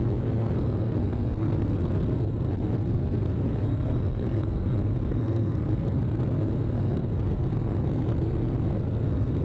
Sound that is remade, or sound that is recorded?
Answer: remade